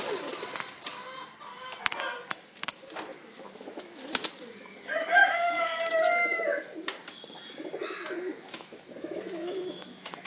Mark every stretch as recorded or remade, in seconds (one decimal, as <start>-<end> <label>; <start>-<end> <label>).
0.0-3.1 recorded; 3.1-4.0 remade; 4.0-5.2 recorded; 5.2-5.8 remade; 5.8-8.3 recorded; 8.3-10.3 remade